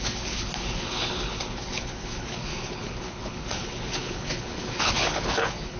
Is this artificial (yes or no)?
yes